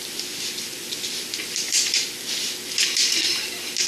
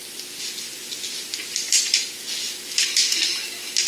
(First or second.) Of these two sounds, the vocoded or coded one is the first